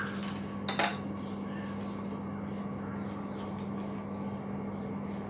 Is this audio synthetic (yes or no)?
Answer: no